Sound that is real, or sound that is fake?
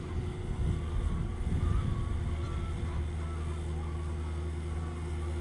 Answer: real